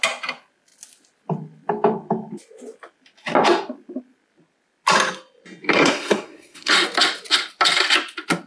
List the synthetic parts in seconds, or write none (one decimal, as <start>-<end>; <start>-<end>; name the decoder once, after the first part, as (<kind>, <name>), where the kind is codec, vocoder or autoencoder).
5.7-6.7 (codec, SNAC)